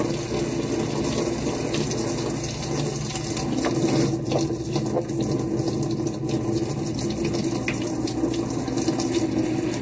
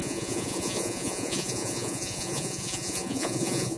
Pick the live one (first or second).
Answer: first